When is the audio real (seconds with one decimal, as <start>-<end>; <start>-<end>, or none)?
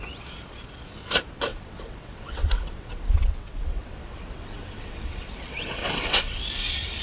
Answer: 0.0-1.5; 5.3-5.8; 6.4-7.0